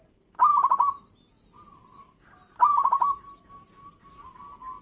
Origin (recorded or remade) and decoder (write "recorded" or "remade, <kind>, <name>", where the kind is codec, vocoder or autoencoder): recorded